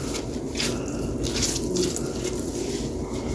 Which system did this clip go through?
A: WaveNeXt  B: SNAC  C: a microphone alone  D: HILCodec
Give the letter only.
C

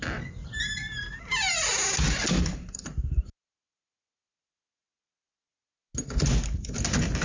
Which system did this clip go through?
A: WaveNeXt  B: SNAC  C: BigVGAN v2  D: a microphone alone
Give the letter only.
D